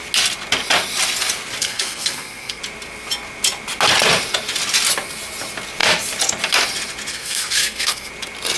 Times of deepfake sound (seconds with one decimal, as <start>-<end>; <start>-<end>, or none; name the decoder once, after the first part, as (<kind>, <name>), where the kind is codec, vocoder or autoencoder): 1.6-2.6 (codec, SNAC); 7.1-8.1